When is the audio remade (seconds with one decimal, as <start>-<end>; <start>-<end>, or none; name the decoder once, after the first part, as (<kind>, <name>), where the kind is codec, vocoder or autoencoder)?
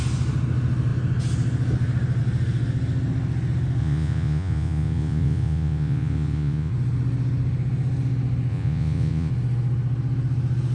3.8-6.7 (vocoder, Vocos); 8.5-9.3